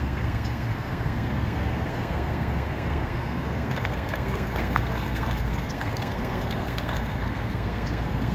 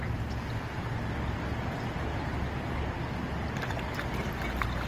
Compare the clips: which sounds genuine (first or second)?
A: second